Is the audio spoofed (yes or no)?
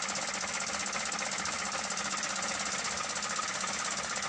no